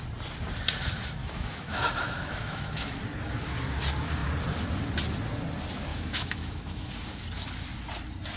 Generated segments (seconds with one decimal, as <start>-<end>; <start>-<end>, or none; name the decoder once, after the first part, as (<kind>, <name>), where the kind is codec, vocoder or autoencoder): 1.2-3.0 (autoencoder, DAC-VAE); 5.9-6.9